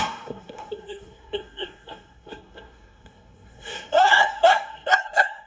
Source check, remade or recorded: remade